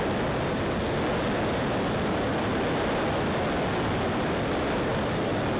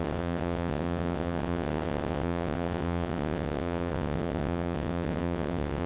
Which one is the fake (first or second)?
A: second